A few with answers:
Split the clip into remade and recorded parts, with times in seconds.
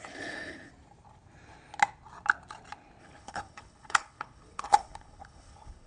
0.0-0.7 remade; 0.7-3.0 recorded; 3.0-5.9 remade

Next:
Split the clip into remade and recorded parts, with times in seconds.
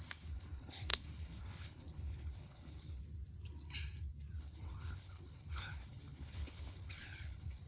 0.0-3.0 remade; 3.0-4.4 recorded; 4.4-7.7 remade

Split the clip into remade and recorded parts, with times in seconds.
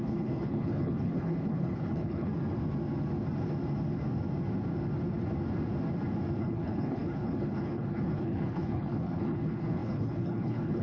0.0-2.3 remade; 2.3-6.4 recorded; 6.4-10.8 remade